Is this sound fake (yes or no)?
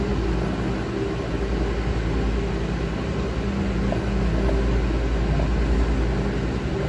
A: no